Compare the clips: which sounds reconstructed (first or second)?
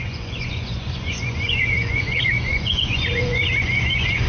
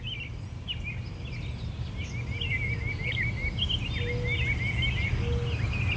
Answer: first